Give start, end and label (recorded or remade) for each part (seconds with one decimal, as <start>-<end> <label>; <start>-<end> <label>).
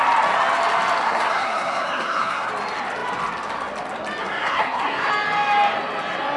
0.0-1.0 recorded; 1.0-2.5 remade; 2.5-4.2 recorded; 4.2-5.1 remade; 5.1-6.4 recorded